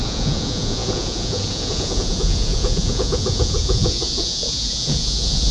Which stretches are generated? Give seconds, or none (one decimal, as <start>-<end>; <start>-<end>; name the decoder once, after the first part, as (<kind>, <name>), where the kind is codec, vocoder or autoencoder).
0.0-5.5 (vocoder, Vocos)